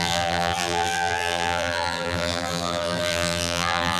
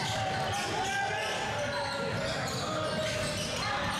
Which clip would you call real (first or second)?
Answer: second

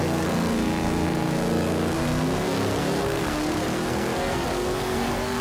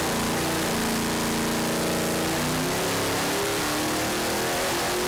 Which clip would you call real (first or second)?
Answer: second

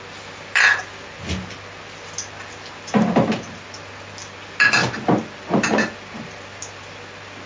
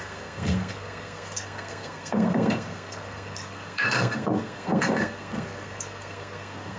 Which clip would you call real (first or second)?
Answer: first